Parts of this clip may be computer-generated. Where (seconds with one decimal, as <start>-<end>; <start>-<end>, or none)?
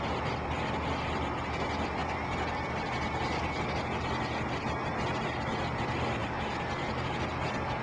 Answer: 6.2-7.2